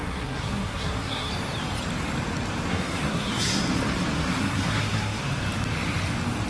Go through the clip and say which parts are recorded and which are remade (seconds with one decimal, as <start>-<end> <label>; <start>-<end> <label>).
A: 0.0-1.3 remade; 1.3-2.7 recorded; 2.7-3.6 remade; 3.6-4.4 recorded; 4.4-5.2 remade; 5.2-6.5 recorded